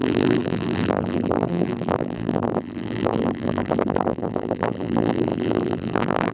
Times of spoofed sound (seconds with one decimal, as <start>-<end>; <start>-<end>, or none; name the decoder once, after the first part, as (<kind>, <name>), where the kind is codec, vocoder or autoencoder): 0.0-6.3 (vocoder, BigVGAN v2)